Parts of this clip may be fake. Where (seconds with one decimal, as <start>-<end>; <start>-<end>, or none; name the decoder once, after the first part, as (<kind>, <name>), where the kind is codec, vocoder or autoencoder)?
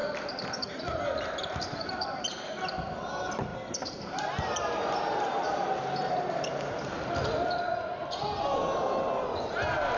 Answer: 1.4-2.2 (vocoder, BigVGAN v2); 3.5-6.8